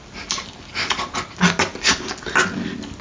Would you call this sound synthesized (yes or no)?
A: no